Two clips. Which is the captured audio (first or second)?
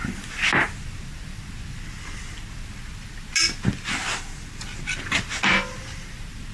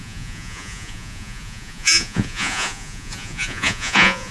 first